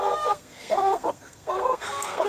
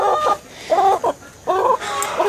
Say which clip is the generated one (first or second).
first